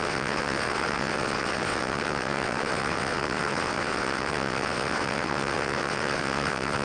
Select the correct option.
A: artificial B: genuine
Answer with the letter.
A